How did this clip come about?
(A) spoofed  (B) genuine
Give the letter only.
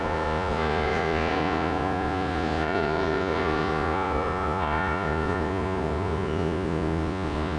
A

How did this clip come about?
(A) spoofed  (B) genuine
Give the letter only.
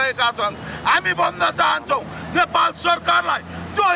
B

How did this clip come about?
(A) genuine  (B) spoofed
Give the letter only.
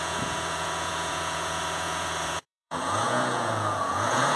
B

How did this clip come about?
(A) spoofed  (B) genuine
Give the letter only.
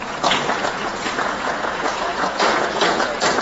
A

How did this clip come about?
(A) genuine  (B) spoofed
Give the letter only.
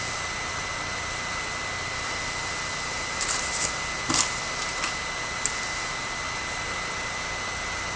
A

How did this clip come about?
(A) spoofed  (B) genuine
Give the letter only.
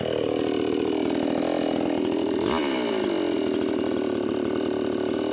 B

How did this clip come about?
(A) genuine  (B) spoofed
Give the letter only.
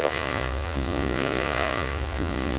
B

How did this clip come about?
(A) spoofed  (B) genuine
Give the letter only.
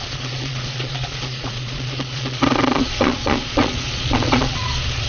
A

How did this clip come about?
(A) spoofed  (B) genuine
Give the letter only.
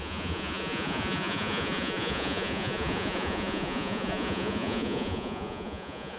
A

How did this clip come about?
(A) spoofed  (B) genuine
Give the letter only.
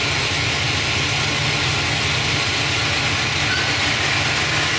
B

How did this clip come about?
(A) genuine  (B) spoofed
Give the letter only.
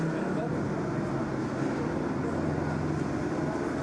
A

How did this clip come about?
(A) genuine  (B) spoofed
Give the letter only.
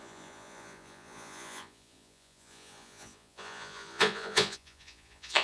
B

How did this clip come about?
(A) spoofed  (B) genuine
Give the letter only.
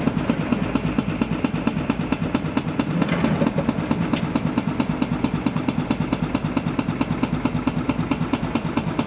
B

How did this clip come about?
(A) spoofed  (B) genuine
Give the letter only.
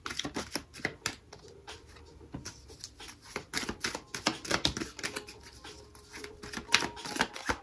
B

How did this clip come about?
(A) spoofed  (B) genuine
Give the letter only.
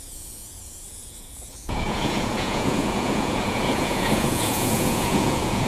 A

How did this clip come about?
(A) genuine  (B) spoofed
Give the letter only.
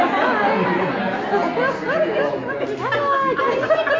A